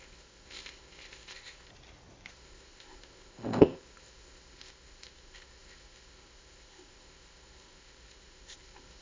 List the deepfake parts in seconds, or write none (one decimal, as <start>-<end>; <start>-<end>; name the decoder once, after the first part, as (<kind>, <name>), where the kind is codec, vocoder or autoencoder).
0.0-1.7 (codec, ZipCodec); 2.3-9.0